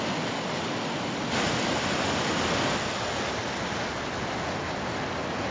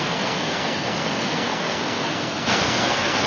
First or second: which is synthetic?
second